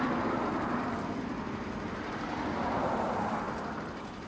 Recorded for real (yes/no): no